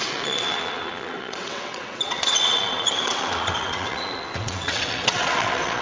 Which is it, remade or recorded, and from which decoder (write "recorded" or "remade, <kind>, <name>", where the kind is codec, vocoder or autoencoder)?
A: remade, vocoder, WaveNeXt